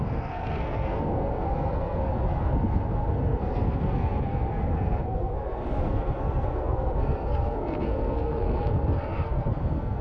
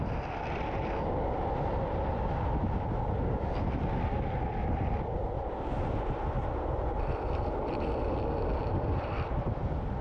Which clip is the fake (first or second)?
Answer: first